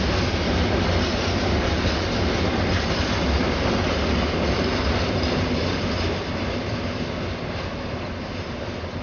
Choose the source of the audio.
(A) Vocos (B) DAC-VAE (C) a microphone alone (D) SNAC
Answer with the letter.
C